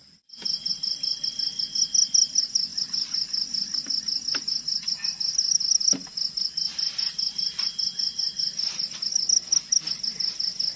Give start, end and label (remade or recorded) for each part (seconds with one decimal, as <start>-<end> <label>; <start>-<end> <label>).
0.0-10.8 recorded